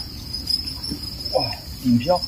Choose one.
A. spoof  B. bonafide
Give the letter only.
B